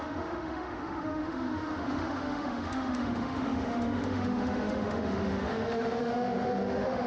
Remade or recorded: remade